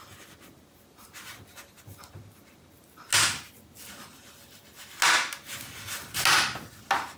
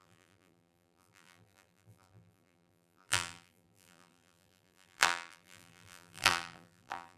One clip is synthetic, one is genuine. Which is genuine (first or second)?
first